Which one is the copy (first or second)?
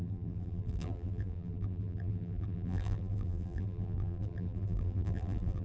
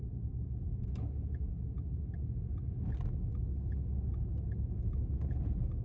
first